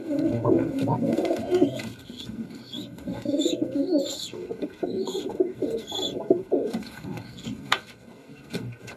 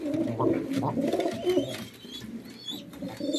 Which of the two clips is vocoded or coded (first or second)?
first